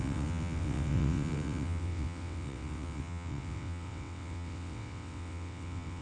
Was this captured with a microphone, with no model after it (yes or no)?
no